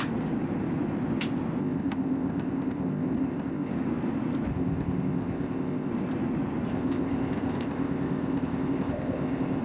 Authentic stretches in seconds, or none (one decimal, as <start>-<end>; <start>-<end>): 0.0-1.6; 3.7-4.5; 5.9-6.7

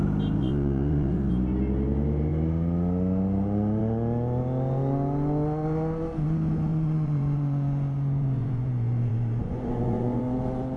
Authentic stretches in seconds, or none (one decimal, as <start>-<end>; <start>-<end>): 0.0-0.4; 1.3-6.7; 10.2-10.8

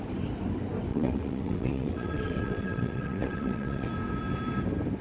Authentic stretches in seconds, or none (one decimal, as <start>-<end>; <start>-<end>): 0.0-0.9; 3.9-5.0

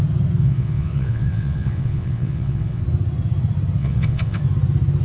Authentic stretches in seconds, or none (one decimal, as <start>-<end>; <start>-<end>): 0.0-0.4; 2.8-3.8; 4.4-5.0

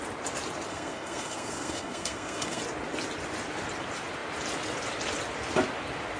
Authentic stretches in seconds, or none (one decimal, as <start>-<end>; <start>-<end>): 0.0-0.7; 2.6-6.2

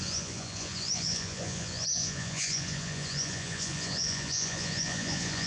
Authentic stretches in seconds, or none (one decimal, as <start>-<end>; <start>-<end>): none

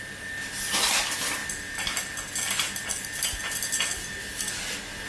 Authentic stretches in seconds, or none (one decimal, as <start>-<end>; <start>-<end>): 0.0-5.1

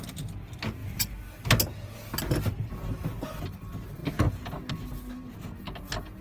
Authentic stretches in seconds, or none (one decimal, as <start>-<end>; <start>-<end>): 0.0-6.2